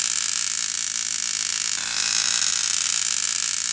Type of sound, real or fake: real